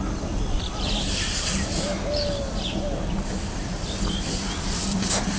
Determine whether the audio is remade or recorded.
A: recorded